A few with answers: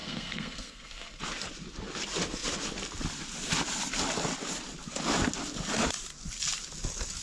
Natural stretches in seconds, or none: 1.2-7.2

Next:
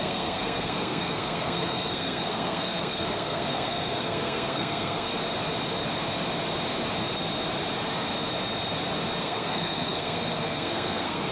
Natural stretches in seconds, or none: 5.1-9.2

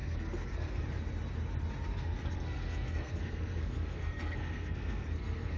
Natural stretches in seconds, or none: 0.8-1.9

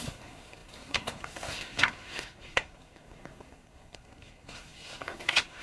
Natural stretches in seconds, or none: none